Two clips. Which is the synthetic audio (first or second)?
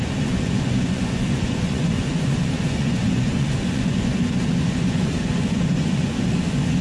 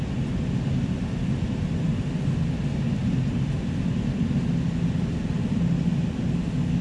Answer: first